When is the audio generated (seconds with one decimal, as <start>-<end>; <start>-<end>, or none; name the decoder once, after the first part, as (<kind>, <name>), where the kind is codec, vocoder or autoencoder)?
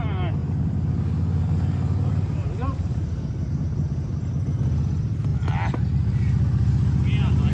0.4-3.1 (vocoder, BigVGAN v2)